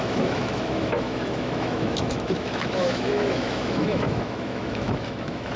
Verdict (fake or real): fake